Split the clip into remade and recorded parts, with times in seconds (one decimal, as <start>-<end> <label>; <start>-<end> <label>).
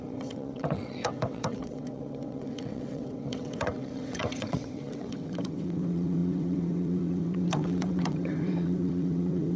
0.0-9.6 remade